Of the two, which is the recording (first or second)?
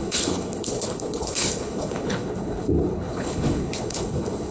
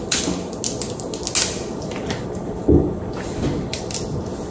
second